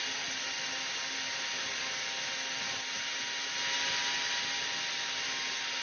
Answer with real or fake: real